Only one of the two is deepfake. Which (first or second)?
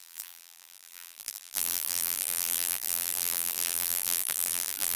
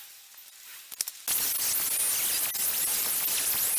first